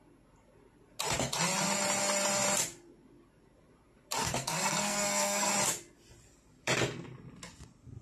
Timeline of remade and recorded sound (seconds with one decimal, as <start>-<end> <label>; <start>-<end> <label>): 0.0-4.2 recorded; 4.2-5.5 remade; 5.5-8.0 recorded